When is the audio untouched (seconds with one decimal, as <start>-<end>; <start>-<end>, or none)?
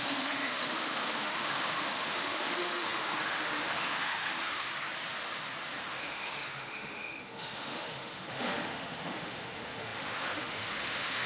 4.7-5.8